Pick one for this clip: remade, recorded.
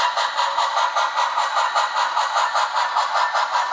recorded